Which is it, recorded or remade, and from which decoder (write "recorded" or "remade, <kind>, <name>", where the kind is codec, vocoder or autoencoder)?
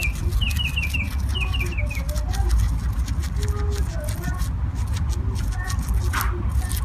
recorded